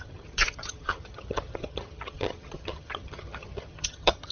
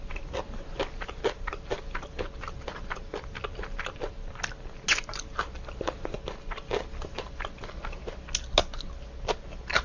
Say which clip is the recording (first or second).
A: second